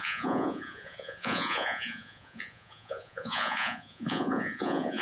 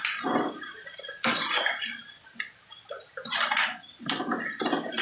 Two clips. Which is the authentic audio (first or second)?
second